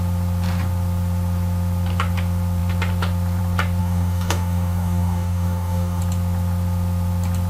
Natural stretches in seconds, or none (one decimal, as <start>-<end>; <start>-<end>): 0.0-3.8; 6.0-7.5